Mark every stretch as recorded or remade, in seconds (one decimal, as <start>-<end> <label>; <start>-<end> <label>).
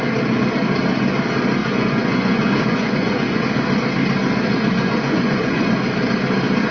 0.0-1.6 recorded; 1.6-3.4 remade; 3.4-4.5 recorded; 4.5-5.7 remade; 5.7-6.7 recorded